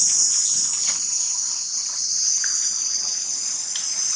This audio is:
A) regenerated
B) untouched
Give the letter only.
B